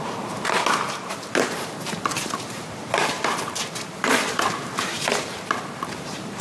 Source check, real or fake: fake